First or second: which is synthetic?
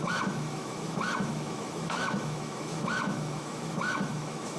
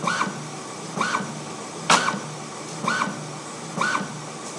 first